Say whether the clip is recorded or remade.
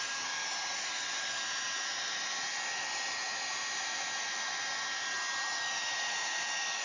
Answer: recorded